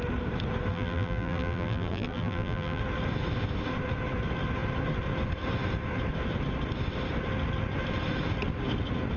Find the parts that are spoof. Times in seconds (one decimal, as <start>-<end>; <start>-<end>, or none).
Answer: 0.7-2.8